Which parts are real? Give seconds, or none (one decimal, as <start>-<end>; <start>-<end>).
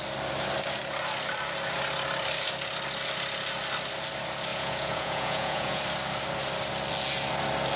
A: 0.0-4.5; 5.8-7.8